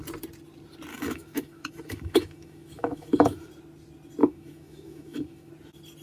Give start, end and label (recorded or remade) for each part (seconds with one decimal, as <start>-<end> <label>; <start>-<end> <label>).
0.0-0.9 recorded; 0.9-3.5 remade; 3.5-4.2 recorded; 4.2-5.5 remade; 5.5-6.0 recorded